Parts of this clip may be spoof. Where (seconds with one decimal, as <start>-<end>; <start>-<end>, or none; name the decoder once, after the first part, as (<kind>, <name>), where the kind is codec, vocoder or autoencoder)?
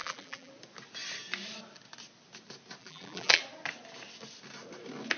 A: 0.0-0.5 (vocoder, BigVGAN v2); 2.8-3.4